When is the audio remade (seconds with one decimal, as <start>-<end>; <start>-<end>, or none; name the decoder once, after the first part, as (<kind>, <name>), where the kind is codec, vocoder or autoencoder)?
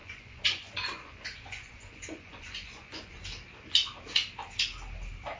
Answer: 0.0-3.2 (vocoder, Vocos)